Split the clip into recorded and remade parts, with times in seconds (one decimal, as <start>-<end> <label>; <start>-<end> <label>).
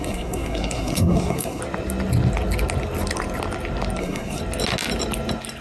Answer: 0.0-1.6 remade; 1.6-4.0 recorded; 4.0-4.4 remade; 4.4-5.6 recorded